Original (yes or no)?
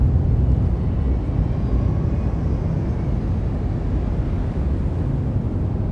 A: yes